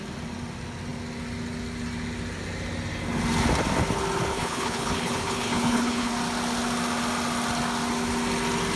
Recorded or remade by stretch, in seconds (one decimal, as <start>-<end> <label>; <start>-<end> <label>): 0.0-4.3 recorded; 4.3-6.1 remade; 6.1-8.8 recorded